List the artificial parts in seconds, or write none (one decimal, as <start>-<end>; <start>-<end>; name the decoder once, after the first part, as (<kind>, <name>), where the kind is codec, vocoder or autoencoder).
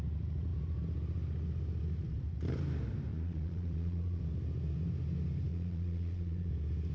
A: 3.1-4.2 (vocoder, Vocos); 5.5-6.5